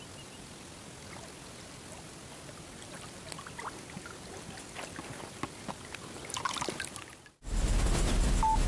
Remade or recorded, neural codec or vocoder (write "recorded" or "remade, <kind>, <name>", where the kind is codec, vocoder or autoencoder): recorded